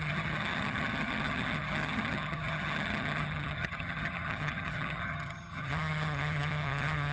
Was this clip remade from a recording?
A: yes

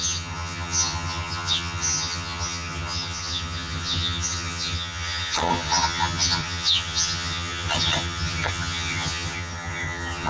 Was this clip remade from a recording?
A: yes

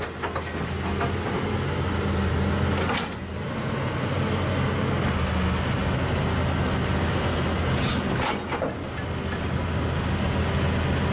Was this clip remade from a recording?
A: no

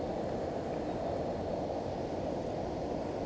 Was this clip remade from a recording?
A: no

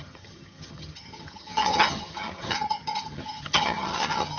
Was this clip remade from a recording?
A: yes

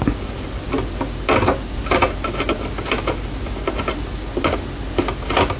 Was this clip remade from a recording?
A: no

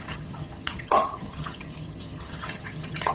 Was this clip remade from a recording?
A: yes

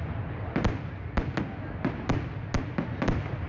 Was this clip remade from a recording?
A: no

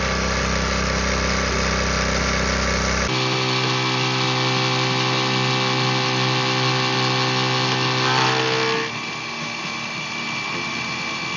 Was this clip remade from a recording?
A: no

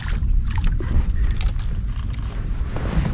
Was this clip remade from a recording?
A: no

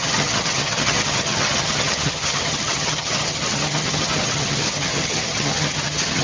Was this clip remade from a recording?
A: yes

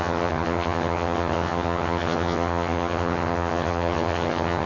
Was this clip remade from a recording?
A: yes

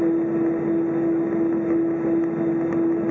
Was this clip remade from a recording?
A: no